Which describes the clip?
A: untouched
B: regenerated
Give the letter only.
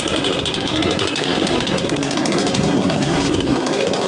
B